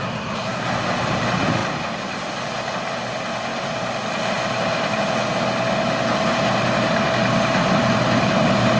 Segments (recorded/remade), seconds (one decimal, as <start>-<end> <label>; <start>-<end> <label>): 0.0-0.7 remade; 0.7-8.8 recorded